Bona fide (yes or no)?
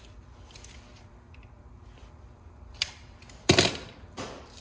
no